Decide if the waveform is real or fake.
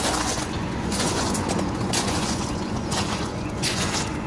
fake